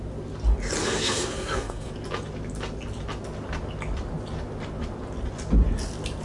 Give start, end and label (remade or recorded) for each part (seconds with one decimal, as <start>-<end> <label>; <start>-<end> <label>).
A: 0.0-0.8 recorded; 0.8-1.9 remade; 1.9-6.2 recorded